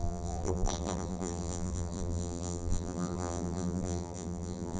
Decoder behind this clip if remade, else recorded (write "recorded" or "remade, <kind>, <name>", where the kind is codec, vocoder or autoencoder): remade, vocoder, BigVGAN v2